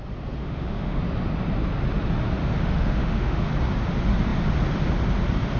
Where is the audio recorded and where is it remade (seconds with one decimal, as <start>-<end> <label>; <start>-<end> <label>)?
0.0-0.4 recorded; 0.4-1.0 remade; 1.0-2.4 recorded; 2.4-3.5 remade; 3.5-5.6 recorded